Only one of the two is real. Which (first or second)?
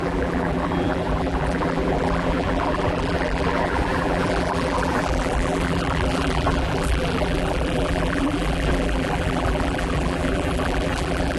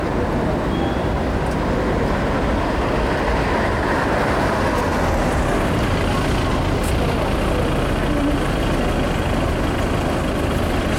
second